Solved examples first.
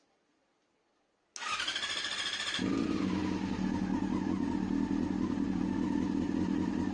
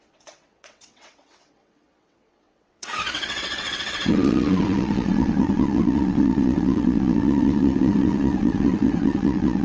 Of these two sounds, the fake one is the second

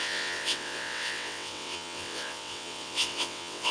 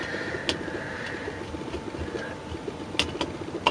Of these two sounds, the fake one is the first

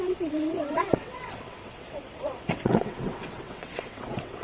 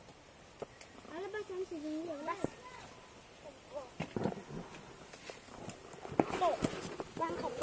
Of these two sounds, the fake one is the first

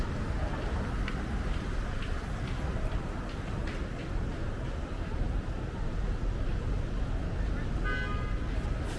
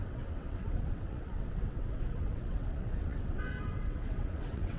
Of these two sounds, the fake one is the second